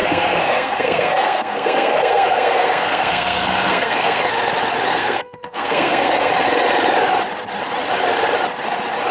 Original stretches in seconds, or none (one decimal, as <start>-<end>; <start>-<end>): 4.2-4.9; 6.3-9.1